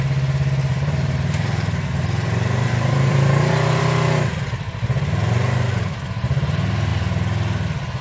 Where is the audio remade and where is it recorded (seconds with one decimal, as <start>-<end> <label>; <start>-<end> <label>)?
0.0-0.7 recorded; 0.7-3.8 remade; 3.8-8.0 recorded